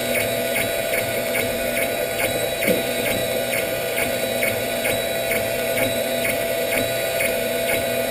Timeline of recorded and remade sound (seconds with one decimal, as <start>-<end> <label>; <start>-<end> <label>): 0.0-0.8 recorded; 0.8-8.1 remade